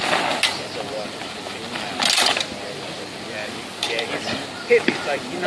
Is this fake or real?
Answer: real